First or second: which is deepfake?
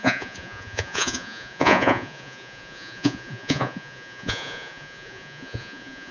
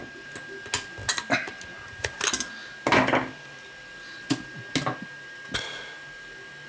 first